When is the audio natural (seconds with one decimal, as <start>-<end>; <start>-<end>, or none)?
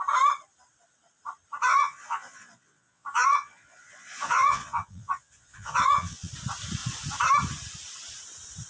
0.0-1.6; 6.3-8.7